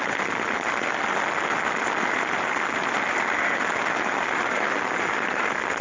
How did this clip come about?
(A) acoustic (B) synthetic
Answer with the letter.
A